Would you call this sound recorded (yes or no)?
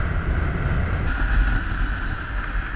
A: yes